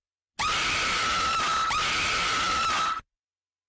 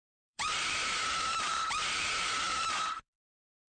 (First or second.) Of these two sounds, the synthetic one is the second